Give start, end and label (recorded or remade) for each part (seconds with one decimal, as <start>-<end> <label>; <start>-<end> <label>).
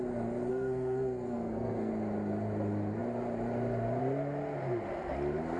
0.0-0.5 recorded; 0.5-1.9 remade; 1.9-5.6 recorded